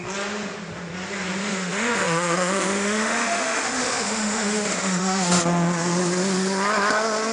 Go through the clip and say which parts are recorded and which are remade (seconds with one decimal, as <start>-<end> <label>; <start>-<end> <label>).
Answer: 0.0-1.4 recorded; 1.4-5.4 remade; 5.4-7.3 recorded